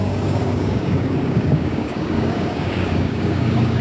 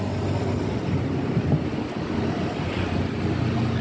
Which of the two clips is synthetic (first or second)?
first